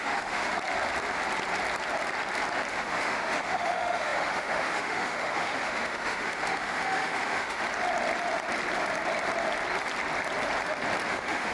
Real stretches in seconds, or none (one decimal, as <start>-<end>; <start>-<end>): 0.5-2.7; 7.6-11.1